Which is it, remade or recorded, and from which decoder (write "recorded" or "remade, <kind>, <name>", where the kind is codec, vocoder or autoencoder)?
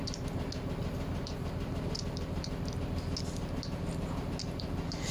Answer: recorded